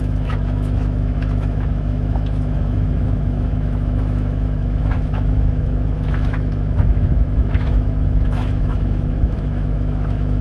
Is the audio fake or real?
fake